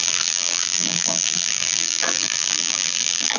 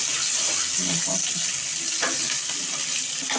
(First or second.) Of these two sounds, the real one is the second